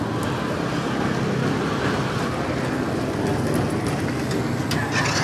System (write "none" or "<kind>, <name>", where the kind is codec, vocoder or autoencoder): none